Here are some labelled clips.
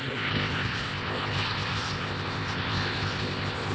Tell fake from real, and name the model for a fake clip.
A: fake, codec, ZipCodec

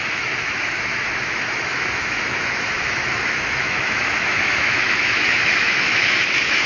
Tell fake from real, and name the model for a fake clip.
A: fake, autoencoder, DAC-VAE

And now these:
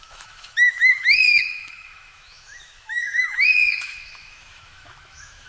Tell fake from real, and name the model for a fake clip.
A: fake, autoencoder, DAC-VAE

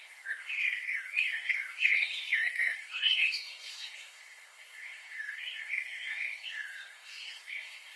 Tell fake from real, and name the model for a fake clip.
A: fake, codec, SNAC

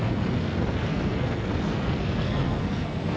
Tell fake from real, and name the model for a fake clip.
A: fake, codec, SNAC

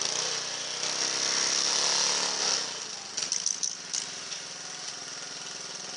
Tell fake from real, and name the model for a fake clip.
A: real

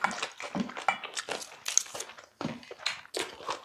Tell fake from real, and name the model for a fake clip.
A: real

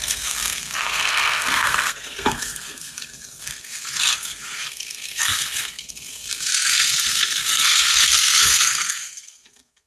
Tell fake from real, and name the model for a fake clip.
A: fake, codec, SNAC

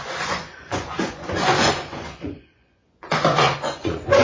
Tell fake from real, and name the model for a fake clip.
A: fake, vocoder, Vocos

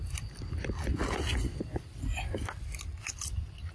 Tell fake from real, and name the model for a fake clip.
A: real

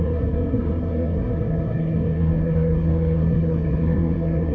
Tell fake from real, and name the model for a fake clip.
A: fake, codec, SNAC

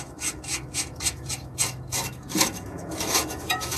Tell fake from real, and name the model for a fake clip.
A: fake, autoencoder, DAC-VAE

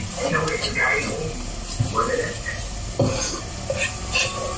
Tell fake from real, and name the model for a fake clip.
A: real